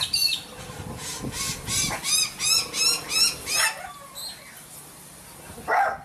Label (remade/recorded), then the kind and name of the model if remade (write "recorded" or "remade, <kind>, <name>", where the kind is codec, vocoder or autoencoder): recorded